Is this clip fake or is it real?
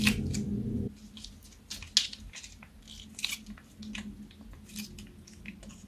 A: real